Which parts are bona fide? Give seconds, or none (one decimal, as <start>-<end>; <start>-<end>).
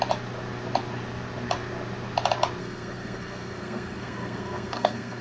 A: 0.0-2.6